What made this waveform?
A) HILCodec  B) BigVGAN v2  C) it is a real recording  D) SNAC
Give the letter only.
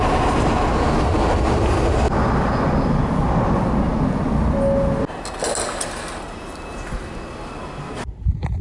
C